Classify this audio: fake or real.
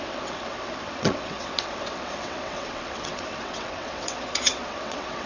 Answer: fake